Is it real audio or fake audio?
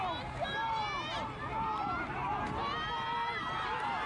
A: real